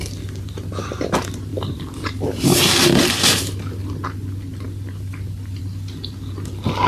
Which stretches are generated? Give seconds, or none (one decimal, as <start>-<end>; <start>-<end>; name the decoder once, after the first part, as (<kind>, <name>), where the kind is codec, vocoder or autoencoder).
none